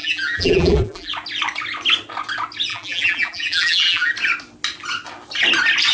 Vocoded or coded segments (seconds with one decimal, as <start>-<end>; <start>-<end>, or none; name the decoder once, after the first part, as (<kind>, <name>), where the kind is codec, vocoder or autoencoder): 0.0-1.1 (vocoder, BigVGAN v2); 2.7-4.1